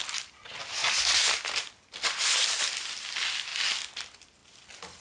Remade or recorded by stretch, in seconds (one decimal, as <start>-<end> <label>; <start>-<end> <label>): 0.0-5.0 recorded